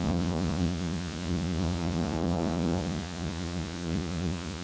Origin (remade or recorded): remade